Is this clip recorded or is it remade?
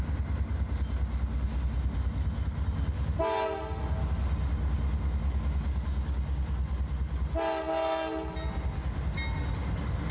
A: recorded